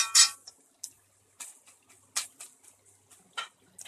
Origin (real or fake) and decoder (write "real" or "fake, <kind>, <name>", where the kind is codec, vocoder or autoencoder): real